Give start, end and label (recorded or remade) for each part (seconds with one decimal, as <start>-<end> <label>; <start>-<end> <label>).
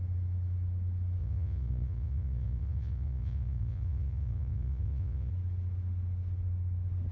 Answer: 0.0-1.2 recorded; 1.2-5.3 remade; 5.3-7.1 recorded